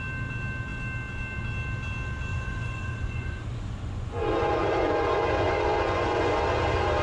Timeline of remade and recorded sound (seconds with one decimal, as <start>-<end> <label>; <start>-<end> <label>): 0.0-2.3 recorded; 2.3-6.4 remade; 6.4-7.0 recorded